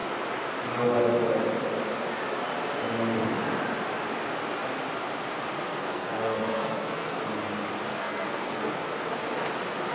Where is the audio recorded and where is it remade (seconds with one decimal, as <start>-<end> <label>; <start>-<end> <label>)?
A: 0.0-5.7 recorded; 5.7-7.2 remade; 7.2-7.9 recorded; 7.9-8.6 remade; 8.6-9.9 recorded